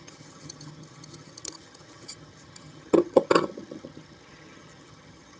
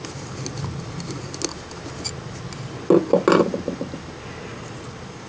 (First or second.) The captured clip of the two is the second